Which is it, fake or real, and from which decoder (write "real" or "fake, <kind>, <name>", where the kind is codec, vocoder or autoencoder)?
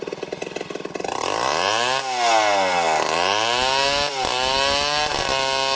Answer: real